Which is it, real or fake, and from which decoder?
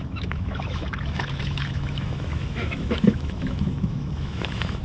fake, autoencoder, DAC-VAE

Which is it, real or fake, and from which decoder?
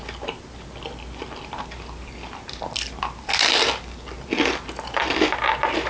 real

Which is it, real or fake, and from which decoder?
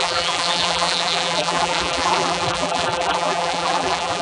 fake, vocoder, BigVGAN v2